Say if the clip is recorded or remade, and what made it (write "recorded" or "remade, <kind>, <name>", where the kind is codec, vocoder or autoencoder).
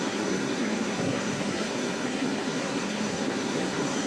remade, codec, SNAC